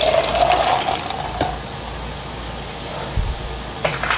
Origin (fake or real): real